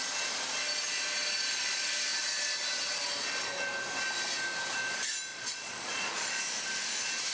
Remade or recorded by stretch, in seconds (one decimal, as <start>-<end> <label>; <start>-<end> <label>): 0.0-5.3 recorded; 5.3-6.4 remade; 6.4-7.3 recorded